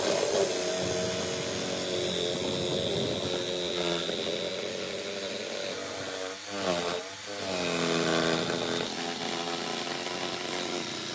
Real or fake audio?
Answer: real